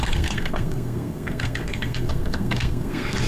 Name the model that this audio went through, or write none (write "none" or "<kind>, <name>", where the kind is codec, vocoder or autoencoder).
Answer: codec, SNAC